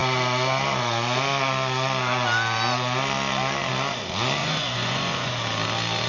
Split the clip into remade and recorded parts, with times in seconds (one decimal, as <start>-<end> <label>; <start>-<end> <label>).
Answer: 0.0-4.4 recorded; 4.4-5.3 remade; 5.3-6.1 recorded